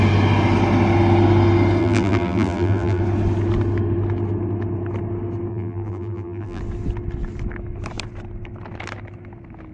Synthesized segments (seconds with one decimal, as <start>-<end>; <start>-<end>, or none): 1.8-3.0; 5.5-6.6